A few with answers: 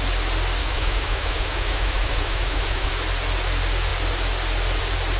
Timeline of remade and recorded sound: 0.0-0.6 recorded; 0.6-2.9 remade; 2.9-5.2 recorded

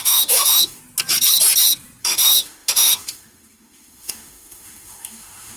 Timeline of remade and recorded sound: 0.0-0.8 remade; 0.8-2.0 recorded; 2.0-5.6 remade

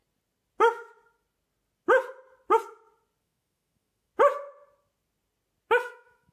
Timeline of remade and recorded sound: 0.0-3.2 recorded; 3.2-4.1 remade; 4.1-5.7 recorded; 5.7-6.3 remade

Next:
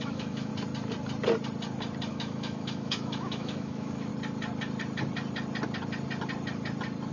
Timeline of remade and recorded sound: 0.0-0.5 remade; 0.5-2.1 recorded; 2.1-4.1 remade; 4.1-7.1 recorded